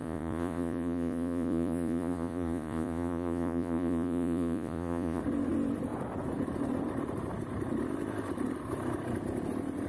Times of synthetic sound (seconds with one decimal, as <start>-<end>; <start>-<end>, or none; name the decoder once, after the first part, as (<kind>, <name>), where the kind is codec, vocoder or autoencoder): 0.0-5.2 (vocoder, Vocos)